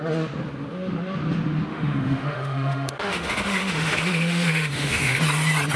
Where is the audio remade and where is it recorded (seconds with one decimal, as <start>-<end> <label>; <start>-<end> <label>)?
0.0-1.7 recorded; 1.7-5.2 remade; 5.2-5.8 recorded